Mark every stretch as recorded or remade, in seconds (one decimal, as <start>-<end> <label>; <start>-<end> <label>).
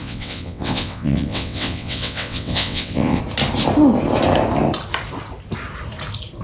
0.0-3.2 remade; 3.2-6.4 recorded